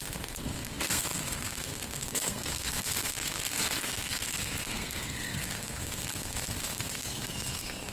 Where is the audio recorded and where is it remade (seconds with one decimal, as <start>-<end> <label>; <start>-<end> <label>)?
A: 0.0-7.9 remade